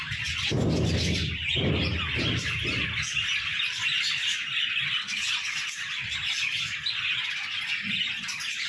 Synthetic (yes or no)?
no